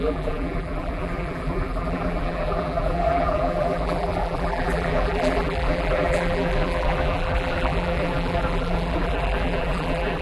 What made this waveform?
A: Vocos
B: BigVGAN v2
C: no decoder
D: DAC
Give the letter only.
B